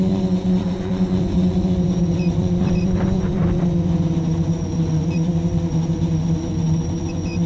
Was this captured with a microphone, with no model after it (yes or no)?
no